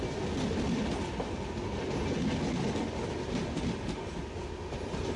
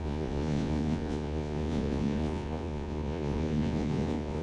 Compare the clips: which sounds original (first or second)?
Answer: first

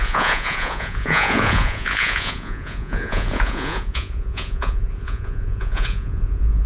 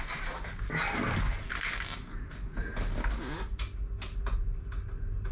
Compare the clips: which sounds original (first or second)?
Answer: second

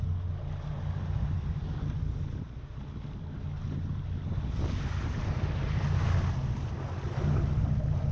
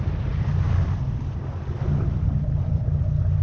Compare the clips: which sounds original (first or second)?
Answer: first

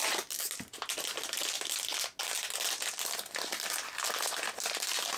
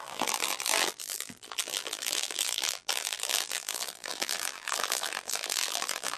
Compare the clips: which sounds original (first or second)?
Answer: first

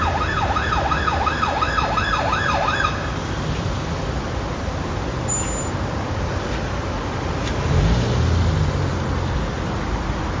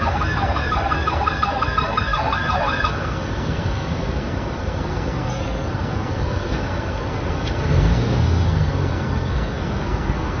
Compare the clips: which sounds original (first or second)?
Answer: first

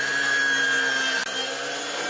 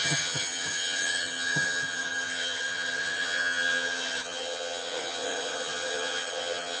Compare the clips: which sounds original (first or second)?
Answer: first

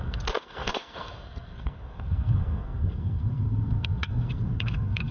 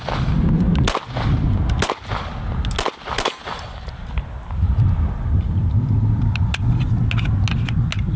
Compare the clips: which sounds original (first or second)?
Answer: second